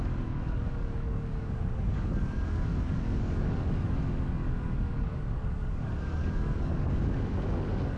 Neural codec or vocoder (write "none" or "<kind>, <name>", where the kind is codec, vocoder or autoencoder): codec, DAC